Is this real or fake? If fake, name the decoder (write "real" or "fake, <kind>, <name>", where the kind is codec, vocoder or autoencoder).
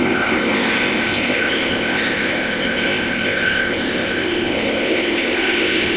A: fake, codec, ZipCodec